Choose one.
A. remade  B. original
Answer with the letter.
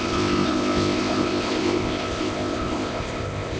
A